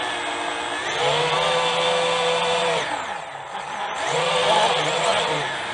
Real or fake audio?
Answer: real